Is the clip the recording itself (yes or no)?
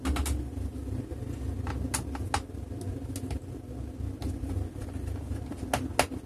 yes